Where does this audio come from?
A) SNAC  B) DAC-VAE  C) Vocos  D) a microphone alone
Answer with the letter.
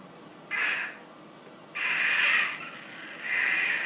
D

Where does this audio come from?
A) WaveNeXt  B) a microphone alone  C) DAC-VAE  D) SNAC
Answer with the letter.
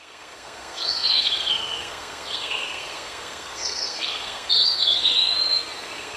D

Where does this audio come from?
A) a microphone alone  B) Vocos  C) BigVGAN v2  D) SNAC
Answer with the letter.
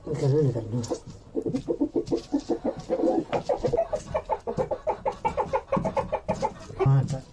A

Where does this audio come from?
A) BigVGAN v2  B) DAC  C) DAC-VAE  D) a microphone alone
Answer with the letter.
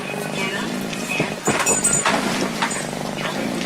D